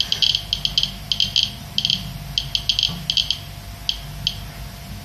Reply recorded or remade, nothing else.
recorded